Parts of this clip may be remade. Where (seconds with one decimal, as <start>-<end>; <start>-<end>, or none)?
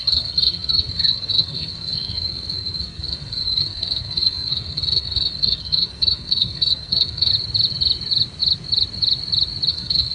0.0-7.3; 9.7-10.1